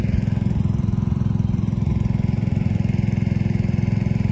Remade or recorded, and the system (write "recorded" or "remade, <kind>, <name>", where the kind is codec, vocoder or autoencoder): recorded